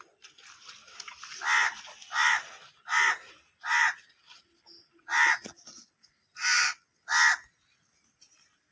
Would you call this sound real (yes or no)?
no